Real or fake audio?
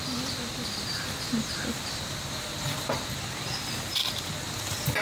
real